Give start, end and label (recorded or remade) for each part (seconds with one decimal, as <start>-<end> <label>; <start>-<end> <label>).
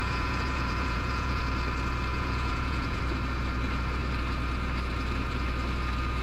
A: 0.0-1.4 remade; 1.4-2.1 recorded; 2.1-3.0 remade; 3.0-6.2 recorded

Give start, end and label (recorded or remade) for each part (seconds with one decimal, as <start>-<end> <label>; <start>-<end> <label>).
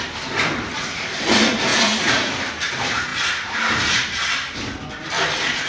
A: 0.0-5.7 recorded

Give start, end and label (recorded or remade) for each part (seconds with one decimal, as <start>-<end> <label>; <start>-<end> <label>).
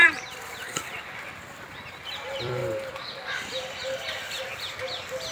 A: 0.0-2.6 remade; 2.6-3.3 recorded; 3.3-5.3 remade